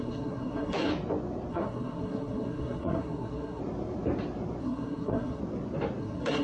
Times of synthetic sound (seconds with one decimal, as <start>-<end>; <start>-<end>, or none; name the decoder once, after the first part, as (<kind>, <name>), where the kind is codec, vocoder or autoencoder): 0.0-0.9 (codec, SNAC); 1.5-3.6; 4.6-5.4; 6.0-6.4

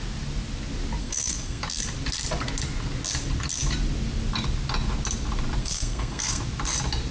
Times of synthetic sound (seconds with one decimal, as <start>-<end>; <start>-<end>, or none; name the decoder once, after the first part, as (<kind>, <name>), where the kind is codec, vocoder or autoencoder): 1.0-1.6 (codec, SNAC); 5.6-6.4

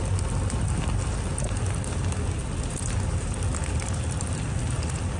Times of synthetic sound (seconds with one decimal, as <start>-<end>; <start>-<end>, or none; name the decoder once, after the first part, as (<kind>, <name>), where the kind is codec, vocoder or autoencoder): none

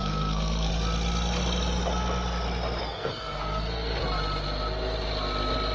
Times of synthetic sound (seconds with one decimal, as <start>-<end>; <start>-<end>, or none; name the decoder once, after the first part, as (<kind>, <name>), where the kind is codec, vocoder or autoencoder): 0.0-0.7 (codec, SNAC); 2.8-4.0

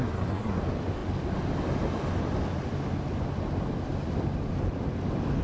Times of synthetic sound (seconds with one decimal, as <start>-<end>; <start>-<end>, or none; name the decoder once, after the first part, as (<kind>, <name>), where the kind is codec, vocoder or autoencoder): 0.0-0.6 (codec, SNAC)

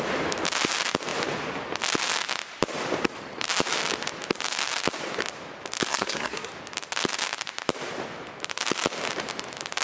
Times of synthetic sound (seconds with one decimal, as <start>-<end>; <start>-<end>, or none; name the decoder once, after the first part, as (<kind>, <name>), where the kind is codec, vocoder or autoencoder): 5.9-6.5 (codec, SNAC)